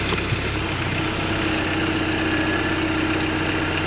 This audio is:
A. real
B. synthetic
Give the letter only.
A